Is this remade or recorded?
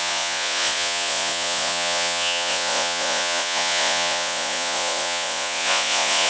remade